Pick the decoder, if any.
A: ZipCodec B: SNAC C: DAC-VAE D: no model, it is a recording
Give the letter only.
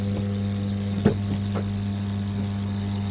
D